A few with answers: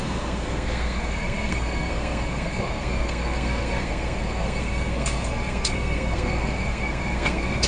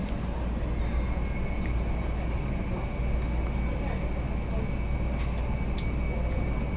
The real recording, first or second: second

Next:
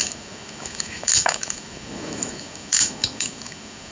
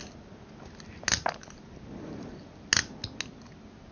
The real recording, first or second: second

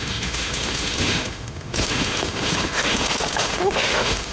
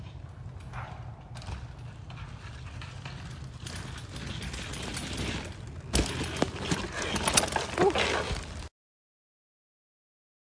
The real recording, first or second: second